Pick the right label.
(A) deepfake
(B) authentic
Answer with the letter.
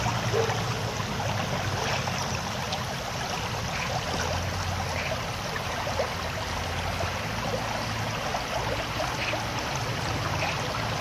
B